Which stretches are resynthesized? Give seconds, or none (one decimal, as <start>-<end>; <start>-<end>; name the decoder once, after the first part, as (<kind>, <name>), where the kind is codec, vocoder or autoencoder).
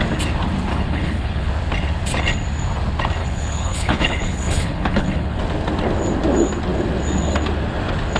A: 0.7-1.5 (codec, HILCodec); 3.2-5.4